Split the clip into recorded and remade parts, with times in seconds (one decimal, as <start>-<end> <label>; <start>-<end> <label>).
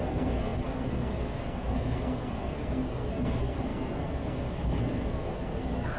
0.0-6.0 remade